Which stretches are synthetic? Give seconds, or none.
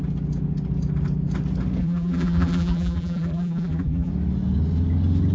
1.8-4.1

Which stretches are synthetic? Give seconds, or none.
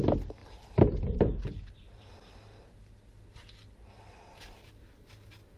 0.4-1.2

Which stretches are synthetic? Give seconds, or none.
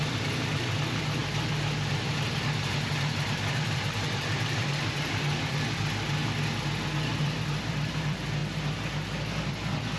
0.0-1.2; 1.9-6.2; 7.2-8.4; 9.2-10.0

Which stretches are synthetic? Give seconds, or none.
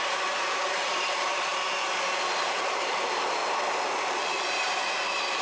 0.0-1.5; 2.4-3.4; 4.2-5.4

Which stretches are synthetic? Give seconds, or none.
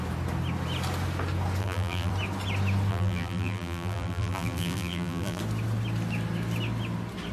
1.6-2.1; 2.9-5.4